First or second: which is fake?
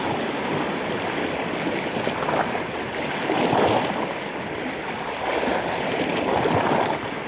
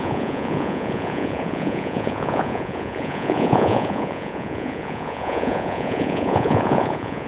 second